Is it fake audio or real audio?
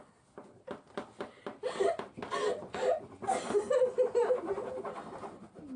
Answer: real